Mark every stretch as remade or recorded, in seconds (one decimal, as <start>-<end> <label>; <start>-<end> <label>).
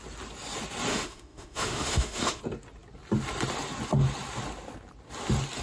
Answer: 0.0-0.9 recorded; 0.9-2.4 remade; 2.4-5.6 recorded